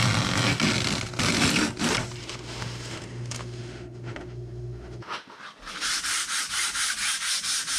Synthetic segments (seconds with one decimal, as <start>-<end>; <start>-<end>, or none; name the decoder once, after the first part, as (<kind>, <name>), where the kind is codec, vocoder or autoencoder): 2.2-5.4 (autoencoder, DAC-VAE)